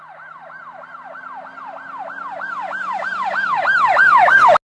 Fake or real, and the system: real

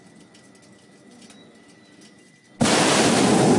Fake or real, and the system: real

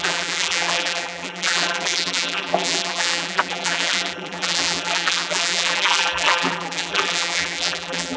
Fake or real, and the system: fake, vocoder, BigVGAN v2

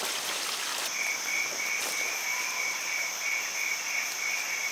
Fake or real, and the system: real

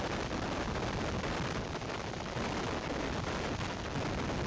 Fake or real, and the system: real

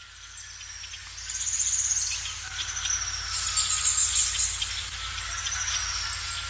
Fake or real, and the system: real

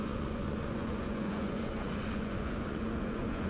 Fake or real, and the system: fake, vocoder, Vocos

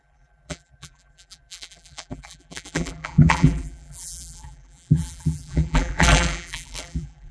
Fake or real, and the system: fake, vocoder, BigVGAN v2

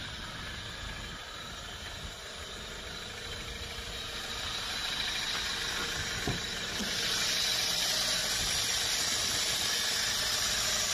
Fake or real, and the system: real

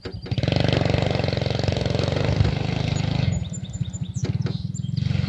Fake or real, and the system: real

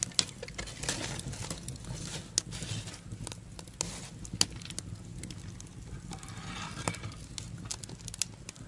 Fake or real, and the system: real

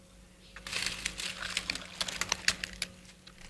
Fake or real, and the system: real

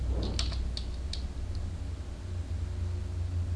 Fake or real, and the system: real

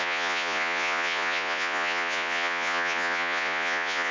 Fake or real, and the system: fake, vocoder, Vocos